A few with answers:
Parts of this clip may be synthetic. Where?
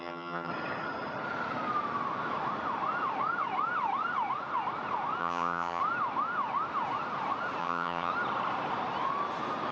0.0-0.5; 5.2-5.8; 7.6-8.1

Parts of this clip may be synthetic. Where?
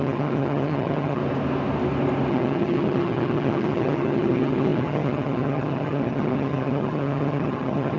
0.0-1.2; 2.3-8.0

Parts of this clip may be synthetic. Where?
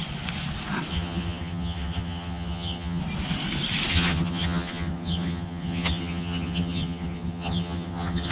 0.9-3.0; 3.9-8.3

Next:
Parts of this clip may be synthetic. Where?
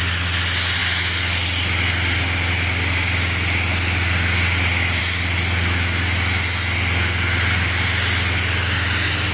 none